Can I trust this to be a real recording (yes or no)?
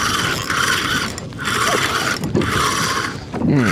yes